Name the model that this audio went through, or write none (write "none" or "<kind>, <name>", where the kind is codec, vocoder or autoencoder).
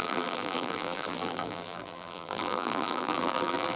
vocoder, BigVGAN v2